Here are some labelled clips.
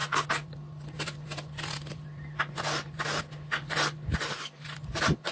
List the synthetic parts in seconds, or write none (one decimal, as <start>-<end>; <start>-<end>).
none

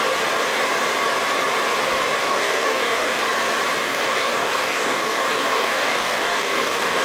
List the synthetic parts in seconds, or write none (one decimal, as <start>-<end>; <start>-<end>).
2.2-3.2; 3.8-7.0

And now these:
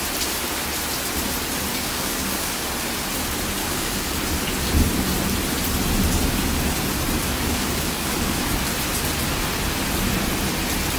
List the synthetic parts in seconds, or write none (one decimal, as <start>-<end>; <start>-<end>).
1.7-2.6; 3.6-4.2; 7.3-8.4

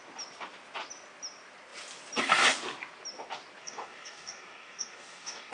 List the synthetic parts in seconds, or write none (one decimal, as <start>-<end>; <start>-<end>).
3.6-5.5